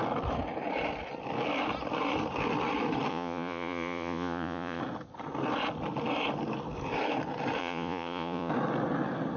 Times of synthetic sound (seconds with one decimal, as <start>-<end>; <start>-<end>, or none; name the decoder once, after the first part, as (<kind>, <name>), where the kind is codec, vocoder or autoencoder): 3.1-4.8 (vocoder, Vocos); 7.6-8.5